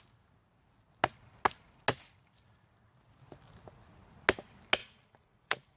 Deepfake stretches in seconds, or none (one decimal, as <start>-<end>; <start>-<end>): 4.8-5.8